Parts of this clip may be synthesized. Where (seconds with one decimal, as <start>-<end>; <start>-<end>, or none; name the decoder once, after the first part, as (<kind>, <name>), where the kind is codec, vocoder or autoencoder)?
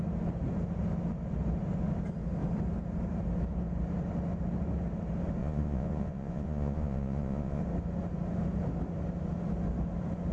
5.4-7.6 (vocoder, Vocos)